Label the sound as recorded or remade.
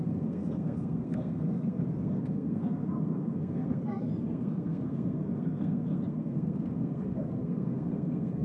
remade